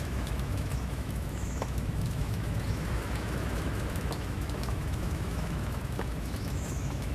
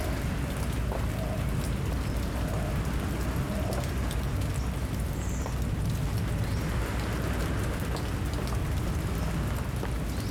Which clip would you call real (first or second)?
second